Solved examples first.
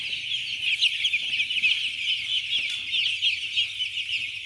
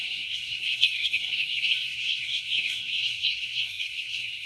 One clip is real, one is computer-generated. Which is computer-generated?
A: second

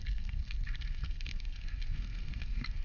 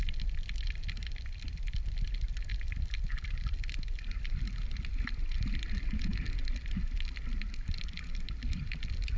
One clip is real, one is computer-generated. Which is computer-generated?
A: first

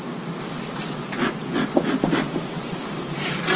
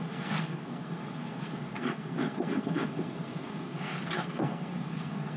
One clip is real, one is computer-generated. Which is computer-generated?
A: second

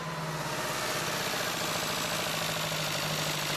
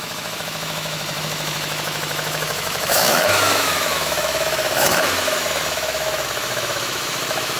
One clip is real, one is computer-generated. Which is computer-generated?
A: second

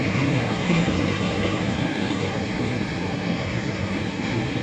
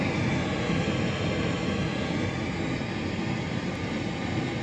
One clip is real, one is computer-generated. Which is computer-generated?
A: first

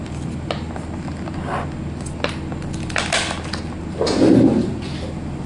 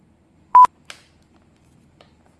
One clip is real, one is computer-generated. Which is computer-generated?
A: second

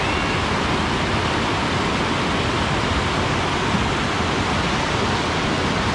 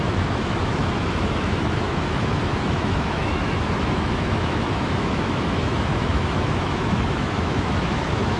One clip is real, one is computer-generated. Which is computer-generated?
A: second